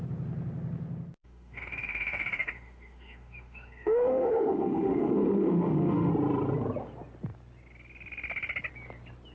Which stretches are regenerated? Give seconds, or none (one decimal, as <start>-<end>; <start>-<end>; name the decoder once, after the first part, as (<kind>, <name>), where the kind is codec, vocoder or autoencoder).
1.2-6.1 (autoencoder, DAC-VAE)